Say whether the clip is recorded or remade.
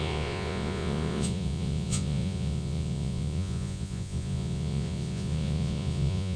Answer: remade